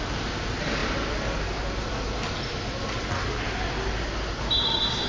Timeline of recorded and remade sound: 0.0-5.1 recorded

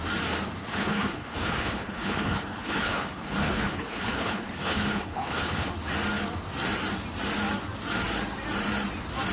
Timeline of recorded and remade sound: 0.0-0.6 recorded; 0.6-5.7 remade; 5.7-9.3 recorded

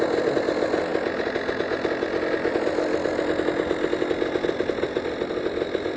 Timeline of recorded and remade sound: 0.0-6.0 recorded